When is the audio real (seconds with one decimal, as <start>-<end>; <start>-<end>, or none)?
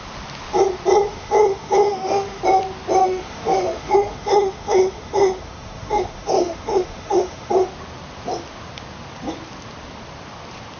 0.0-1.1; 2.4-3.0; 7.5-10.8